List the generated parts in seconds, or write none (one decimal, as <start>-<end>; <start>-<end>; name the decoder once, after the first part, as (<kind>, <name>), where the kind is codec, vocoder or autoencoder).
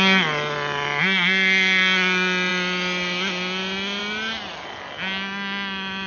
none